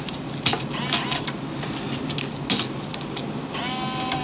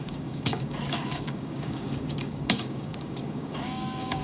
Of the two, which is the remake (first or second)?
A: second